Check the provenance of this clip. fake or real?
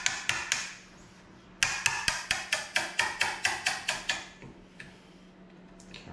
real